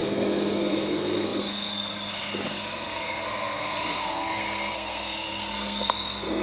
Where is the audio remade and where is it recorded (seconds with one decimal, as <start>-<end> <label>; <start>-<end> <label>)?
0.0-6.4 remade